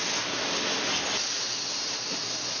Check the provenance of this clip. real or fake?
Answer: real